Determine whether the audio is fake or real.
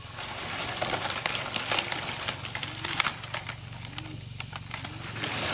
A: real